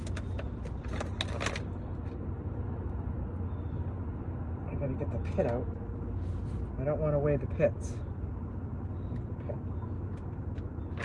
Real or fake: real